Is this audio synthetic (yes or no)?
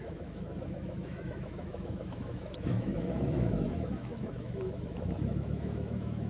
yes